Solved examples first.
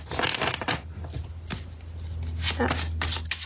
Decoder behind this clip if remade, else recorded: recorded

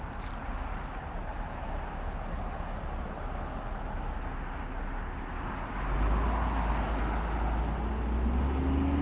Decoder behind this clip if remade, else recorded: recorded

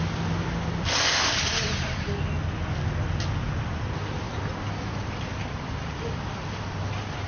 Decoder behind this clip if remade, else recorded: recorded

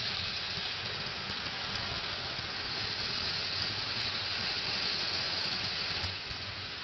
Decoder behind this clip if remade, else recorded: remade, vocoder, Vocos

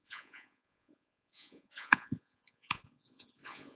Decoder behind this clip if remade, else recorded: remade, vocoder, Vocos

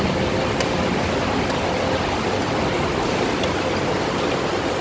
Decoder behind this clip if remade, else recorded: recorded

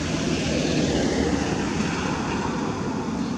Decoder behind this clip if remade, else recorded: recorded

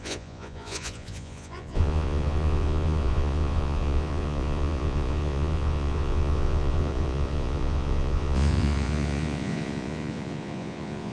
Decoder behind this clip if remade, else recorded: remade, vocoder, Vocos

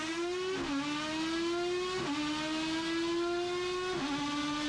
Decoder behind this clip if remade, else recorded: recorded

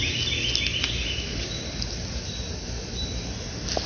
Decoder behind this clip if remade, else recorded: recorded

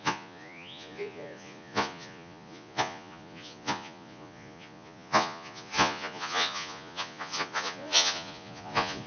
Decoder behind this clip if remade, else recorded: remade, vocoder, Vocos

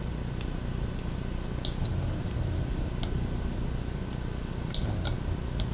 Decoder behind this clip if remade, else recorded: recorded